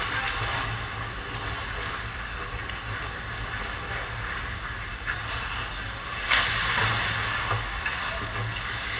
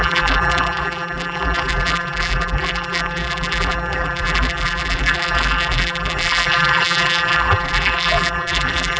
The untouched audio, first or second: first